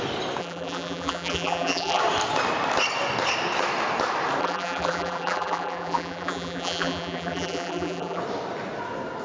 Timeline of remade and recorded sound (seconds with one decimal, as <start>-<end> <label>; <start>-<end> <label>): 0.0-0.4 recorded; 0.4-2.0 remade; 2.0-4.4 recorded; 4.4-8.2 remade; 8.2-9.2 recorded